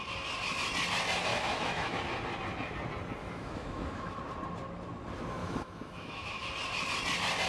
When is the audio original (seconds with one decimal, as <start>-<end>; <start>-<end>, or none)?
0.0-1.3; 2.0-3.2; 4.2-5.4; 6.5-7.5